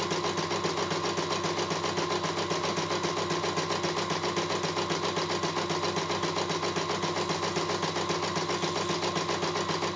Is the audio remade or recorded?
recorded